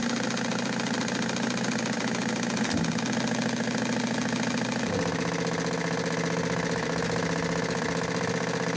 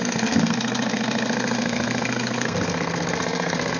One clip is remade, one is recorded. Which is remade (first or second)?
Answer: second